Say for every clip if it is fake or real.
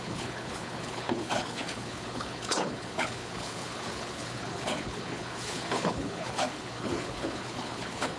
fake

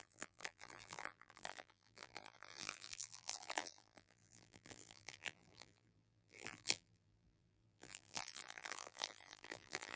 fake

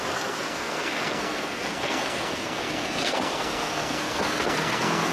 fake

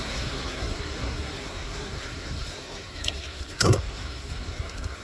fake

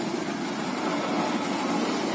real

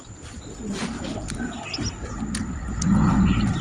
real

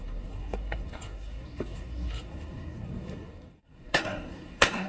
fake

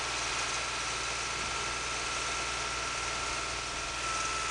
real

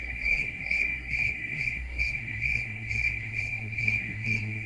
fake